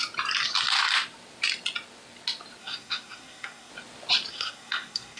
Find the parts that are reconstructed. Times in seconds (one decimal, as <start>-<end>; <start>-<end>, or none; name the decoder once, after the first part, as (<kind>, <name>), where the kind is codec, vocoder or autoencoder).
2.6-3.7 (codec, SNAC); 4.3-5.2